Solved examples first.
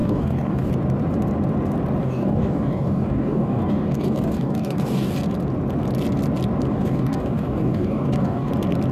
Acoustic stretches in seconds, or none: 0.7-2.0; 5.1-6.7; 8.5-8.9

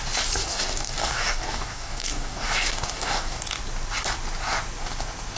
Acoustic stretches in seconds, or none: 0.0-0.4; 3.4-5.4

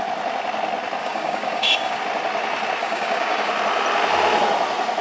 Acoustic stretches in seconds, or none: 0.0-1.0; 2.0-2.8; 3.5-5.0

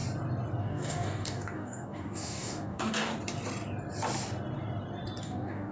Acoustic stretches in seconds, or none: 0.0-0.6; 3.1-5.2

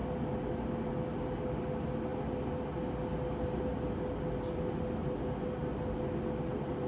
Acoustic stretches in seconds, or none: 0.0-6.9

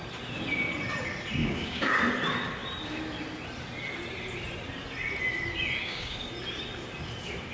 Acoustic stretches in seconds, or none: 0.0-1.4; 2.0-5.8; 6.3-7.5